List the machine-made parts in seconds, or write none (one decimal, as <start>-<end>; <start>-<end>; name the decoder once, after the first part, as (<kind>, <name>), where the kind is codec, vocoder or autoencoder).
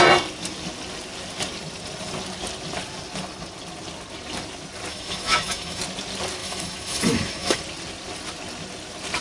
4.9-5.8 (autoencoder, DAC-VAE); 6.4-7.6